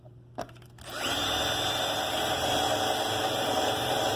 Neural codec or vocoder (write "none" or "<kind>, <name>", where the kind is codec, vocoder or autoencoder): none